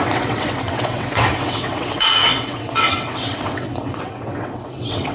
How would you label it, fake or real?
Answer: fake